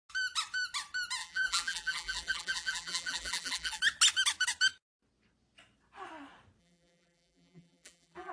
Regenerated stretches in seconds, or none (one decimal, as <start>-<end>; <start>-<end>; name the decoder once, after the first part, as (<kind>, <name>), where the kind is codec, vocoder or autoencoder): 1.2-3.8 (vocoder, BigVGAN v2); 6.6-8.3